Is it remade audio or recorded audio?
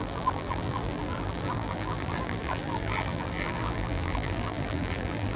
remade